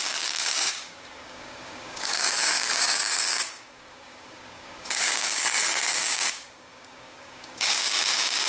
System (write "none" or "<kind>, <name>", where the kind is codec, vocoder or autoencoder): codec, DAC